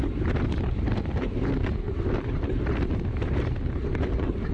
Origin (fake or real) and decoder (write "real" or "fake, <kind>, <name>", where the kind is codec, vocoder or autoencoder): fake, vocoder, BigVGAN v2